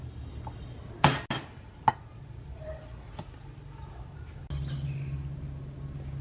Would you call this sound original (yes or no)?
yes